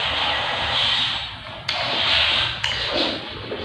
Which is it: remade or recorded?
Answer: recorded